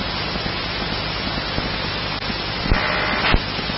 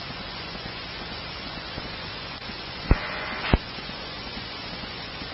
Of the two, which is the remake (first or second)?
second